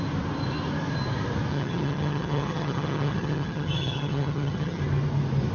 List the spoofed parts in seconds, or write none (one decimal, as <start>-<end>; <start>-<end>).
1.5-4.8